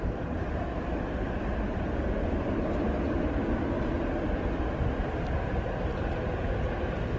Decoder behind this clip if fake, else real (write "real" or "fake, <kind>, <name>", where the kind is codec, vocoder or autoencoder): real